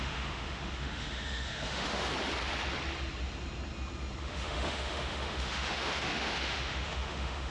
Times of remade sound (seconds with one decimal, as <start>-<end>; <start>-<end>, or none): 0.0-2.1; 4.2-7.5